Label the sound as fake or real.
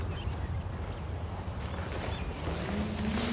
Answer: real